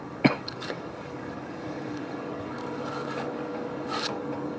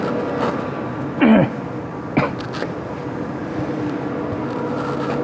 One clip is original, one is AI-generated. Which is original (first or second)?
second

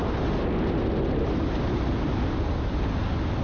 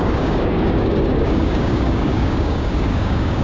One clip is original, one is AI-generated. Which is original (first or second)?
first